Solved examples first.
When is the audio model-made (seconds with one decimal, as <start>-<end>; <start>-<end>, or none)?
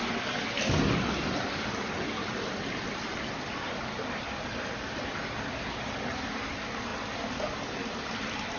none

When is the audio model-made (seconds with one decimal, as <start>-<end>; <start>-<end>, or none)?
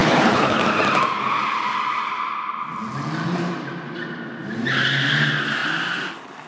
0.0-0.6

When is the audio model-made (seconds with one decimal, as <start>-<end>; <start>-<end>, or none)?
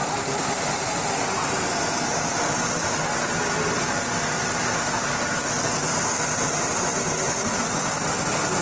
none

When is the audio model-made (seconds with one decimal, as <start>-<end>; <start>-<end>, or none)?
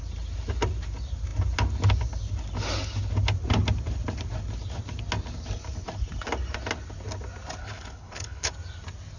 7.6-8.5